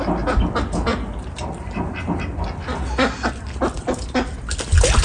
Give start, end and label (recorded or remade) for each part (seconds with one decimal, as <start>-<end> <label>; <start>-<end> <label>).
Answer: 0.0-5.0 recorded